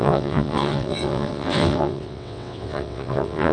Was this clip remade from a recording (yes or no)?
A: yes